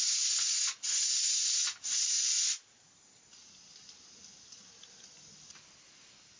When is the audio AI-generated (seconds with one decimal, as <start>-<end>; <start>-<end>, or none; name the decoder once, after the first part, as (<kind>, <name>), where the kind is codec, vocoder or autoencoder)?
none